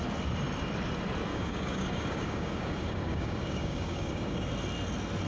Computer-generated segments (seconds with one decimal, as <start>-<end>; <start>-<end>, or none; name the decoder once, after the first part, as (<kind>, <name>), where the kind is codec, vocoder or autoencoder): 1.3-4.5 (codec, DAC)

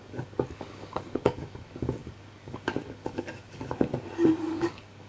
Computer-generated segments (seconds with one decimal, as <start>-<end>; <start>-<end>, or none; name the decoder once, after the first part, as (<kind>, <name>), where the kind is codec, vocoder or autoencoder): 0.0-3.9 (codec, DAC); 4.4-5.1

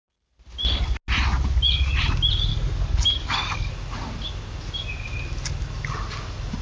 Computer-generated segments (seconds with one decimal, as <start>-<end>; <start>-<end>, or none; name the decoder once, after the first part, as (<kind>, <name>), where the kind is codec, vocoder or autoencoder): 2.5-3.7 (codec, DAC)

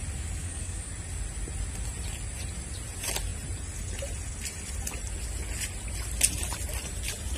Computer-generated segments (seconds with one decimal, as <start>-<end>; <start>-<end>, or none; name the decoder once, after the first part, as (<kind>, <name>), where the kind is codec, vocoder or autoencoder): 0.4-0.9 (codec, DAC)

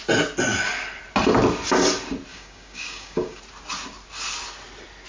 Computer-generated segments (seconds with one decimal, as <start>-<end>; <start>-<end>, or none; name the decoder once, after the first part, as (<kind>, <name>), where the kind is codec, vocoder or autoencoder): 2.3-3.4 (codec, DAC)

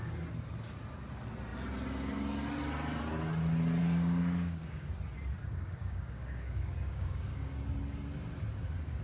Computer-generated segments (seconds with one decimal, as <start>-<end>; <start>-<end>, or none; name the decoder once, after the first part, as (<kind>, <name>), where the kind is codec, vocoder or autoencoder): 3.8-4.9 (codec, DAC); 5.4-7.5